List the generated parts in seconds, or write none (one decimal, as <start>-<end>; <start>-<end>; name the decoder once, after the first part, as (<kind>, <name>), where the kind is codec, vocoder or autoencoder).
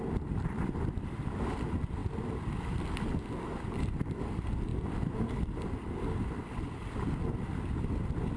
none